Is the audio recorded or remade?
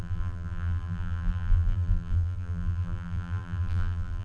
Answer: remade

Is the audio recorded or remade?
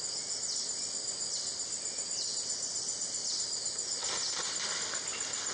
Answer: recorded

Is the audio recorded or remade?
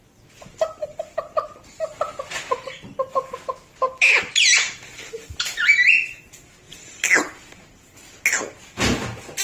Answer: recorded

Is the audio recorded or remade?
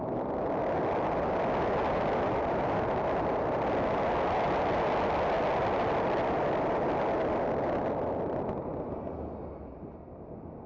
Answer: recorded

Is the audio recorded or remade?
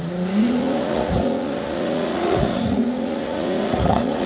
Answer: remade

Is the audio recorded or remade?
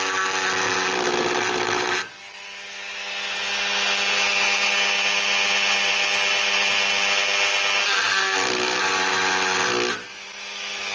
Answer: recorded